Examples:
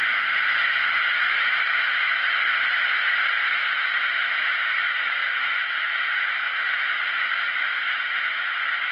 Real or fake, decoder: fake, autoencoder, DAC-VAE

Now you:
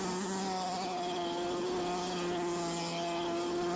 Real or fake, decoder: real